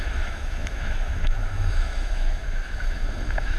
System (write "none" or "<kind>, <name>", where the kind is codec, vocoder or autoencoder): autoencoder, DAC-VAE